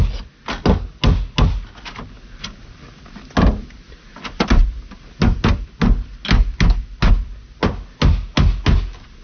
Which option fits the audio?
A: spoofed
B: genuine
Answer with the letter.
B